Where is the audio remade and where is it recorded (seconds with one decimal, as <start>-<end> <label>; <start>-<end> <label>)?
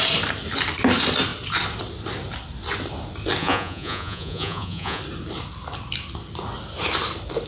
0.0-3.4 recorded; 3.4-5.0 remade; 5.0-7.5 recorded